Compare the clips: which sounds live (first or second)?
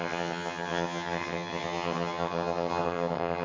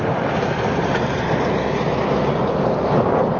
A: second